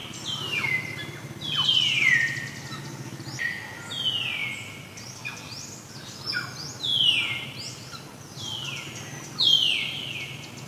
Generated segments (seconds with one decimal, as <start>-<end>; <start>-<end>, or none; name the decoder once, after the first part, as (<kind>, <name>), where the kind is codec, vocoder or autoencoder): none